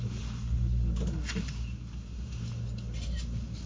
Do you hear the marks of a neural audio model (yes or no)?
no